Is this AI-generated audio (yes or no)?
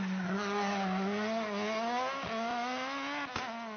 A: no